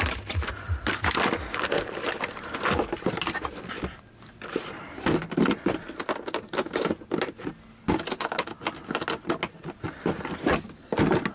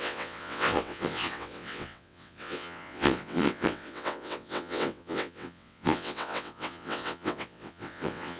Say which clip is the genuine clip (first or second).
first